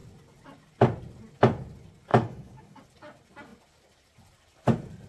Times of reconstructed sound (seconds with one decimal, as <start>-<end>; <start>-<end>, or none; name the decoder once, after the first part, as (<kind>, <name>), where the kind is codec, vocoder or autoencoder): 2.1-2.8 (codec, DAC)